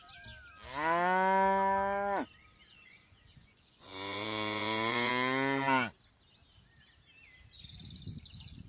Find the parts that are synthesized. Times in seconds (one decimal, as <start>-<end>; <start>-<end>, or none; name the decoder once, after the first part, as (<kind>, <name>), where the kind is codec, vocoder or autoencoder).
2.7-5.1 (vocoder, Vocos)